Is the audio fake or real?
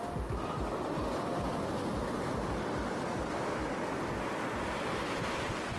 real